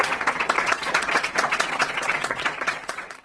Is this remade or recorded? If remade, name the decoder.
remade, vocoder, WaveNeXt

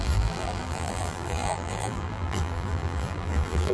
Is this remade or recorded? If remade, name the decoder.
remade, vocoder, BigVGAN v2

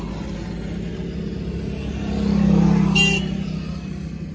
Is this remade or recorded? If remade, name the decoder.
recorded